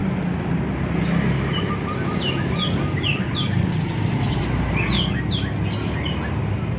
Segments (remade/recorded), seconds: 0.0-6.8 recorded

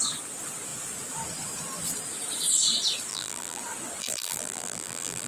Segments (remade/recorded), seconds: 0.0-3.1 recorded; 3.1-3.6 remade; 3.6-4.0 recorded; 4.0-5.3 remade

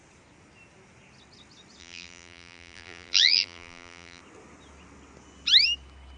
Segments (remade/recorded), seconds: 0.0-1.8 recorded; 1.8-4.2 remade; 4.2-6.2 recorded

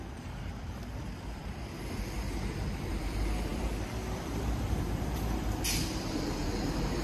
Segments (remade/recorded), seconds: 0.0-7.0 remade